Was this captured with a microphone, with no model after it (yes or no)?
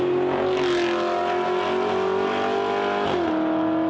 yes